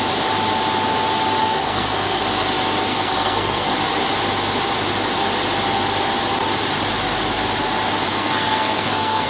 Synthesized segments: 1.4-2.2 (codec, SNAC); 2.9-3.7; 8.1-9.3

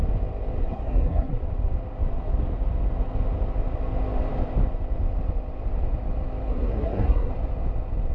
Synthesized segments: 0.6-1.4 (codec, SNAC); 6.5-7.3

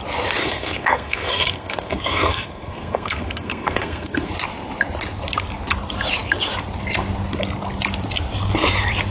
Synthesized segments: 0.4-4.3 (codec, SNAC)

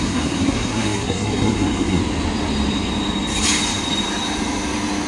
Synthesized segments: 0.0-2.0 (codec, SNAC)